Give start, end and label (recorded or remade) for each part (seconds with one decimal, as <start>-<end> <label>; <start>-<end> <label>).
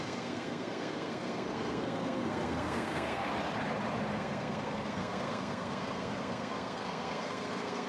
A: 0.0-3.2 remade; 3.2-4.1 recorded; 4.1-7.9 remade